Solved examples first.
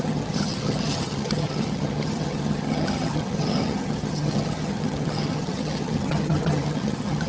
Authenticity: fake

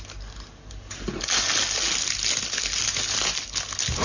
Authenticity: real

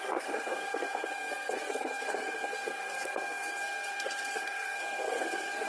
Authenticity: fake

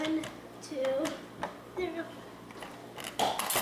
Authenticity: real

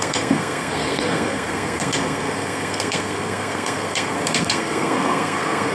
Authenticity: fake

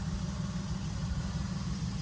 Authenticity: real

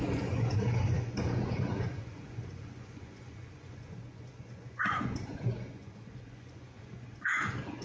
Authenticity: fake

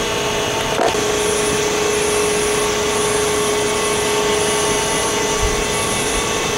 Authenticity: real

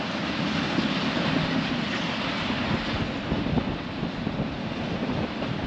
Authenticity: real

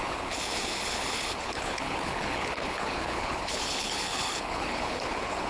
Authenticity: fake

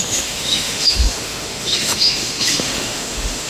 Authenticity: fake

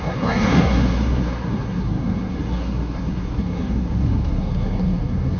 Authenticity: fake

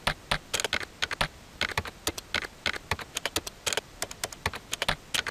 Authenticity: real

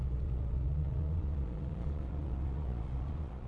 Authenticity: fake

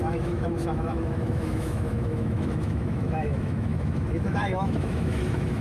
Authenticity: fake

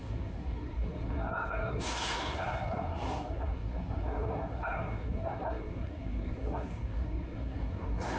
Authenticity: fake